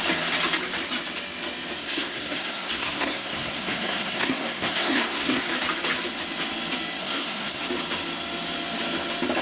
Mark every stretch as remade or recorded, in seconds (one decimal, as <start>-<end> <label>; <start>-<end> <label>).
0.0-1.8 recorded; 1.8-5.4 remade; 5.4-7.0 recorded; 7.0-7.6 remade; 7.6-9.4 recorded